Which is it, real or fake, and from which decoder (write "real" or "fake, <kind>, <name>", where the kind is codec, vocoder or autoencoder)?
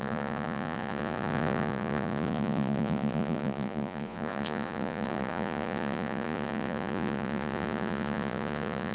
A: fake, vocoder, Vocos